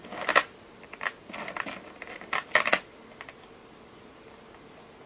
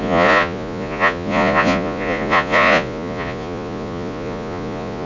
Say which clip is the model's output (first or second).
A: second